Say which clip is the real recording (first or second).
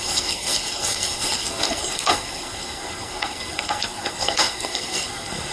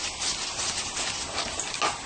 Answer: second